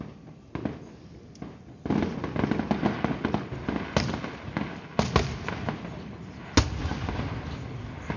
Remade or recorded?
recorded